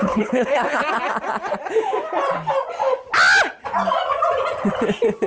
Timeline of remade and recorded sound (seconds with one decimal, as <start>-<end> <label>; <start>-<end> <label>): 0.0-0.8 remade; 0.8-5.3 recorded